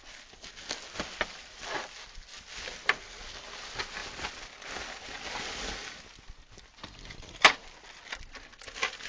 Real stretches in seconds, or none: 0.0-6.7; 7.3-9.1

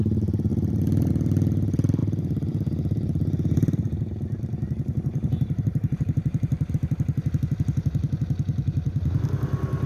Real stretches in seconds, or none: 0.0-0.5; 1.1-2.0; 6.7-9.9

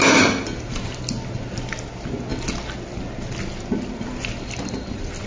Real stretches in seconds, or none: 0.0-5.3

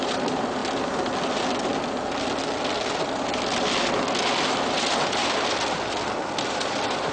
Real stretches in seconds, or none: 0.6-4.5; 5.2-6.5

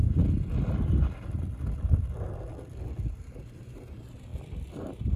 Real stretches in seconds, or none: 0.0-3.1; 4.3-4.8

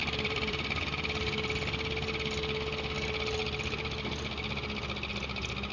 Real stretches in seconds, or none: 0.8-5.7

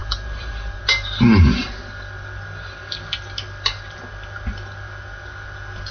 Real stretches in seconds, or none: 0.8-5.9

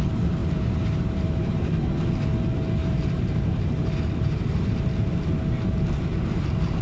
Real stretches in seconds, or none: 0.0-0.4; 1.8-2.8; 4.7-6.8